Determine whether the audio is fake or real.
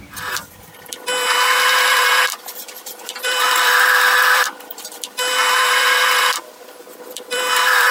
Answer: fake